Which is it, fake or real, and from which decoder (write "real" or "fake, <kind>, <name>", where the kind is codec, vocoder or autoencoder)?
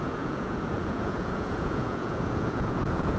fake, vocoder, Vocos